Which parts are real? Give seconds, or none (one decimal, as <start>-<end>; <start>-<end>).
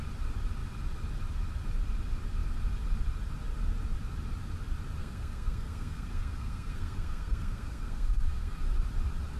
0.0-5.0; 8.6-9.4